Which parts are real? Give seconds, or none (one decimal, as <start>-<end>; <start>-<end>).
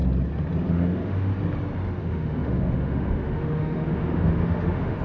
0.0-0.7; 1.3-2.0